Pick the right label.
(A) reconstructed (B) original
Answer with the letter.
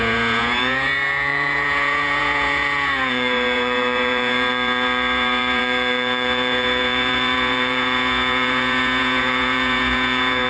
A